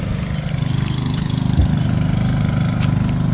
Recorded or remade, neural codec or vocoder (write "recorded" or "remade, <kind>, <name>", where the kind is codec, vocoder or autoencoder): recorded